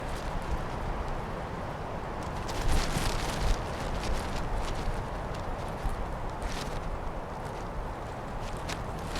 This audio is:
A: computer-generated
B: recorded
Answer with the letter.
B